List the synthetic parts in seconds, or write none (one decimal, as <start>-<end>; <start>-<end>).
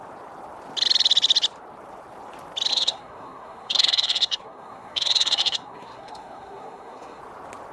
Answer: 2.7-7.2